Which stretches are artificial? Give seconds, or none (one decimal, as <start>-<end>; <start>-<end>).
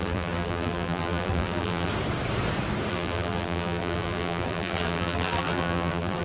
0.0-1.9; 2.9-6.2